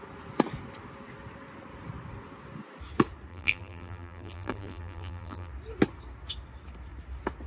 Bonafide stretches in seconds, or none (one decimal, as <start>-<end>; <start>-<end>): 0.0-3.3; 5.5-7.5